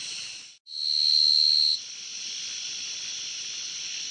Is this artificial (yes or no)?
no